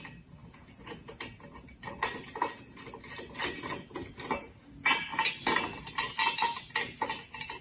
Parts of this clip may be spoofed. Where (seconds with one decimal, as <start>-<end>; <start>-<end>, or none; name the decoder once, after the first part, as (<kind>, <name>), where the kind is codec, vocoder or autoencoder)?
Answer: none